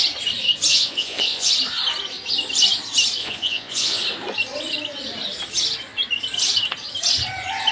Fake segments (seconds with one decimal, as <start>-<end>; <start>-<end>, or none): 0.7-1.5; 3.2-4.0